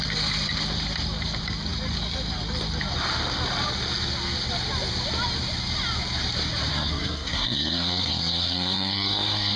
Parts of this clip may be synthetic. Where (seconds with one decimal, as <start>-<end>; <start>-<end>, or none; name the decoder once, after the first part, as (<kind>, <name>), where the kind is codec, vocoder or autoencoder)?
6.7-9.6 (codec, SNAC)